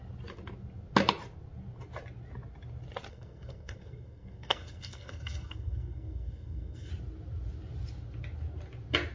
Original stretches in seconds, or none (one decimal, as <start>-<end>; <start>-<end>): 0.0-3.1; 6.9-9.1